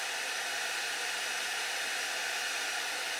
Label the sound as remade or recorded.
recorded